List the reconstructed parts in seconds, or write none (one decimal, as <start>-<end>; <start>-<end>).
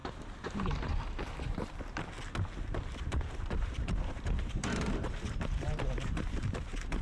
0.0-0.9; 3.1-7.0